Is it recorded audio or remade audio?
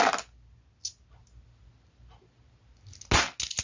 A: recorded